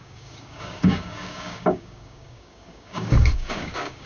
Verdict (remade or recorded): remade